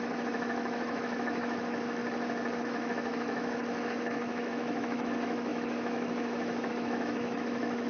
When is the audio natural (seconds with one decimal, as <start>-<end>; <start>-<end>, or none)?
2.0-2.6